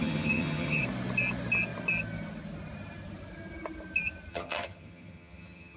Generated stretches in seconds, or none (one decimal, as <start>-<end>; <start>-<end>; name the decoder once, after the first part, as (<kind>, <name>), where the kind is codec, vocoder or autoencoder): 0.0-0.8 (vocoder, HiFi-GAN); 4.3-5.8